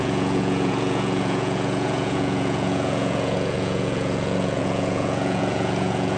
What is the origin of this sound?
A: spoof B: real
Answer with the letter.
A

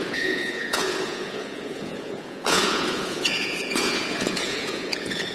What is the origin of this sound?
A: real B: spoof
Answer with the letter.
B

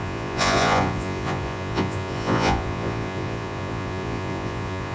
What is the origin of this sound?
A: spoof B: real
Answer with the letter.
A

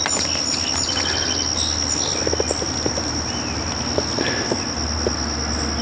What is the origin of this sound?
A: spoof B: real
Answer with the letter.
B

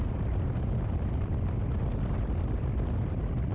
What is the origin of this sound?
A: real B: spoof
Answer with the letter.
A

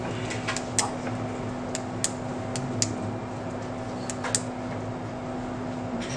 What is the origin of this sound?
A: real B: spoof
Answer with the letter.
A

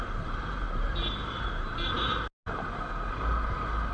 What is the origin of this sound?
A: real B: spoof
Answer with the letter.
A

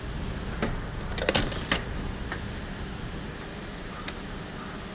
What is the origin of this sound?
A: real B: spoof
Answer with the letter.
A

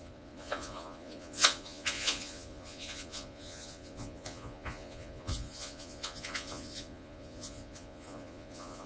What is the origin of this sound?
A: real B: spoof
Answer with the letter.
B